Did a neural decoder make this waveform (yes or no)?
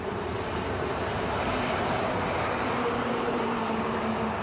yes